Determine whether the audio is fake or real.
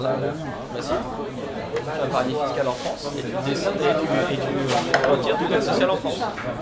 real